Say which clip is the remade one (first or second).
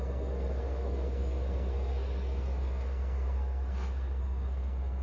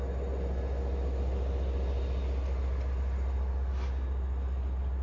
first